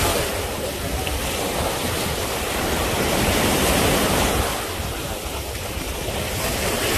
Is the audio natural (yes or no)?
yes